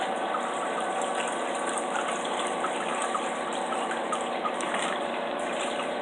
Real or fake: fake